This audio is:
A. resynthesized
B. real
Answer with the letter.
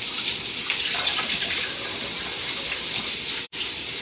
A